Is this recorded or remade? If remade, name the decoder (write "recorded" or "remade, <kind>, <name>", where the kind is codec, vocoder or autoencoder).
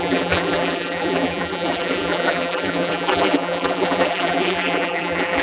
remade, vocoder, BigVGAN v2